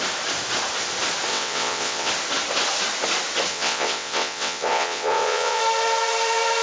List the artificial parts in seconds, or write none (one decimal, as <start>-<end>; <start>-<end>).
1.3-2.1; 3.5-5.6